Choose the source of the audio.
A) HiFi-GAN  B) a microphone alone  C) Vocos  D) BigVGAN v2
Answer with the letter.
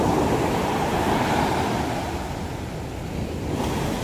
B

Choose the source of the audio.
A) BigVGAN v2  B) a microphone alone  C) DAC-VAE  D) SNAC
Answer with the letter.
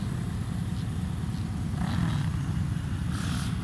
B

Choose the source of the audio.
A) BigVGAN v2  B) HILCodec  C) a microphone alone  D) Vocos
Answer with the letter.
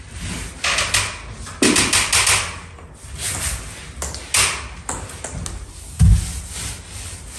C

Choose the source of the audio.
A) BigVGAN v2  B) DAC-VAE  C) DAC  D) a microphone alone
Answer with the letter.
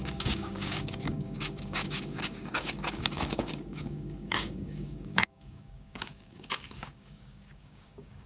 C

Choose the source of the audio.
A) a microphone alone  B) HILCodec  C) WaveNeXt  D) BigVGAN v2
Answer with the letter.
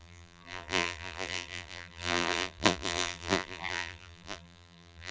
D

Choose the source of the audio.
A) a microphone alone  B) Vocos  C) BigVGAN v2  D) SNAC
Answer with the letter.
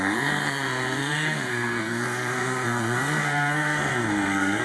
D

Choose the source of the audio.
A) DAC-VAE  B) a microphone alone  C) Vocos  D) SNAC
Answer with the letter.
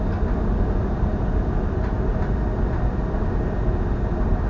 B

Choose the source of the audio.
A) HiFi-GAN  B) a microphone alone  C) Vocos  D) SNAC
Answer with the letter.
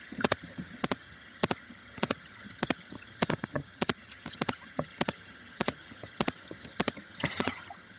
A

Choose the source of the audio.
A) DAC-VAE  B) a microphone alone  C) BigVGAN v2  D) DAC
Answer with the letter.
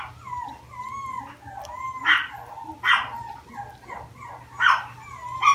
B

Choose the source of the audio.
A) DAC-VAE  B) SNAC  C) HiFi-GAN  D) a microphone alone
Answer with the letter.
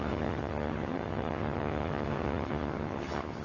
C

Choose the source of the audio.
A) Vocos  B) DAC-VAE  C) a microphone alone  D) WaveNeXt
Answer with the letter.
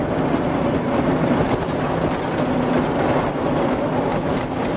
C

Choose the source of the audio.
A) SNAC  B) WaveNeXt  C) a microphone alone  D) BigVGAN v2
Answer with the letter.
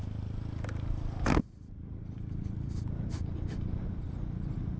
C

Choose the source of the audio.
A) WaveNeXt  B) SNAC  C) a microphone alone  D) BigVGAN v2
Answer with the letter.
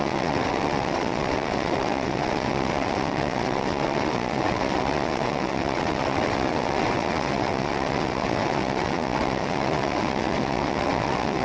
A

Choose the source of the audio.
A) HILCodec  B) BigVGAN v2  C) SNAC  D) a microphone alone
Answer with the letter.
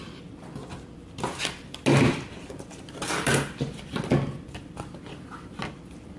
D